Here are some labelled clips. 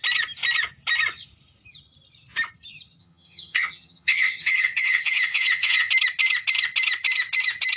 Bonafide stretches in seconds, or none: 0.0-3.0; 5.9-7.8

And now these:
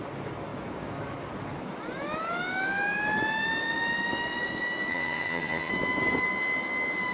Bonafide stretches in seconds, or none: 0.0-4.9; 5.7-7.1

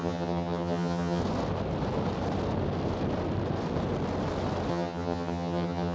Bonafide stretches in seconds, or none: 1.2-4.7

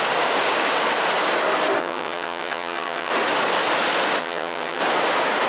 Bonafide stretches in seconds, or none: 0.0-1.8; 3.1-4.2; 4.8-5.5